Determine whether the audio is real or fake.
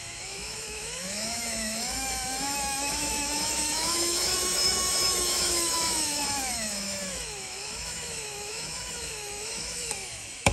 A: fake